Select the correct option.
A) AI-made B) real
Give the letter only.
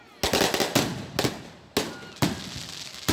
B